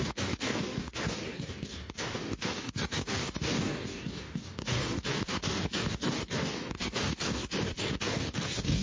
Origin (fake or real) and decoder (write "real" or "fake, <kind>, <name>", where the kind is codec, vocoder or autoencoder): fake, codec, DAC